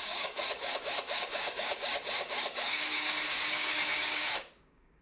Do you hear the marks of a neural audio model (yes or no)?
yes